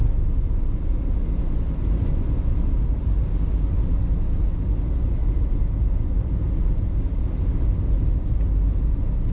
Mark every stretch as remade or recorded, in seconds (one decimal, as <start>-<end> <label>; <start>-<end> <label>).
0.0-1.4 remade; 1.4-5.2 recorded; 5.2-5.7 remade; 5.7-9.3 recorded